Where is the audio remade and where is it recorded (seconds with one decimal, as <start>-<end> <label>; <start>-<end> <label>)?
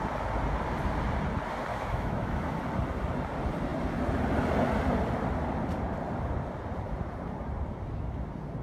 0.0-1.7 recorded; 1.7-2.6 remade; 2.6-8.6 recorded